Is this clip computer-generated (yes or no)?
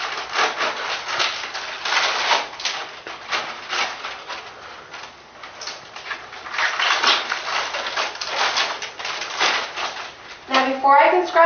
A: no